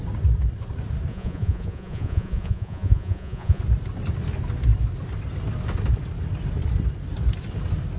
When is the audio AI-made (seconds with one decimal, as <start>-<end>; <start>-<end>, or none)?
1.1-3.6